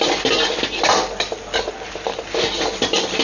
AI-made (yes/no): no